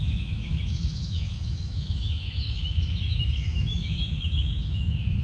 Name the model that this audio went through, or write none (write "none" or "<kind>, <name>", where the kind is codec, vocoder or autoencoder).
autoencoder, DAC-VAE